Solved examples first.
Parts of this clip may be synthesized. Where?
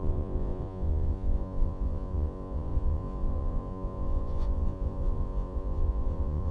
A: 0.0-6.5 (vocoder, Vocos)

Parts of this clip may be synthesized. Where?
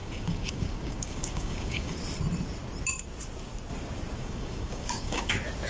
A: 0.0-1.9 (codec, DAC); 4.2-5.3